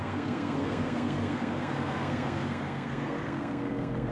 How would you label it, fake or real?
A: fake